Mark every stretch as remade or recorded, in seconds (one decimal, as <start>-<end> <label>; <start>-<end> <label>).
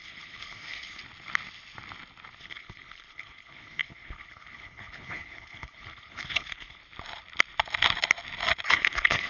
0.0-1.0 remade; 1.0-2.4 recorded; 2.4-6.8 remade; 6.8-8.7 recorded; 8.7-9.3 remade